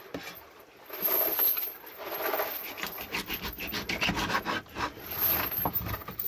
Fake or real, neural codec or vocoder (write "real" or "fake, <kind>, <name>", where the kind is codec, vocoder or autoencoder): real